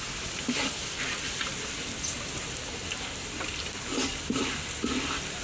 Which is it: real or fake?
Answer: real